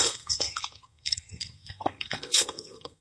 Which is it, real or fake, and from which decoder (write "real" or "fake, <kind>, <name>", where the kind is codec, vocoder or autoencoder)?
fake, codec, SNAC